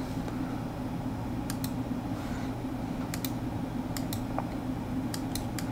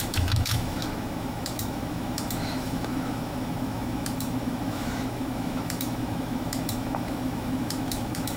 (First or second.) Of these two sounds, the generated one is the second